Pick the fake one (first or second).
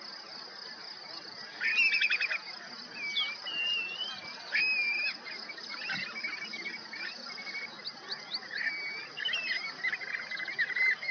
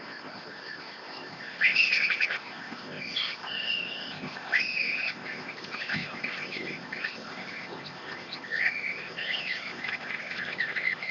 second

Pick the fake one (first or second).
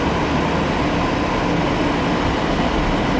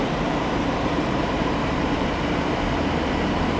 second